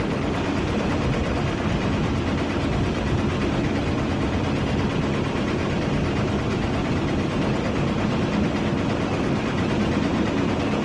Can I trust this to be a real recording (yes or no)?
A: yes